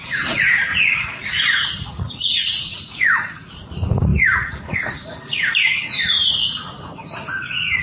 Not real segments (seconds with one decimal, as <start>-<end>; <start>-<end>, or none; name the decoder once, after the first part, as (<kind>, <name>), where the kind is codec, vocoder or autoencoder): 0.0-7.8 (vocoder, Vocos)